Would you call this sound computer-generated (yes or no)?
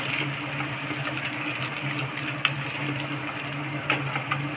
no